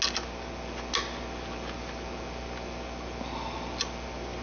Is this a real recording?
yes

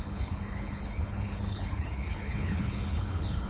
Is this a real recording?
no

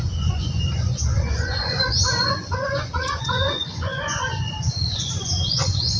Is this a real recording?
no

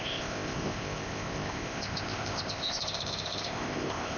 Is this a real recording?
no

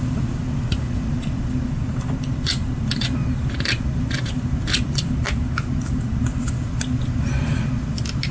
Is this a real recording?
yes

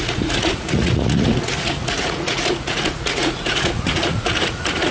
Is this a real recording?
no